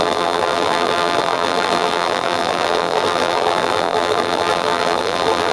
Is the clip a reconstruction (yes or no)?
yes